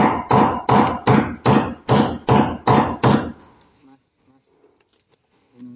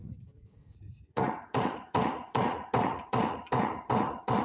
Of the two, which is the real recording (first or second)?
first